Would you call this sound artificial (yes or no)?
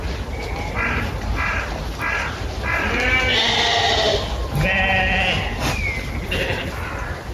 no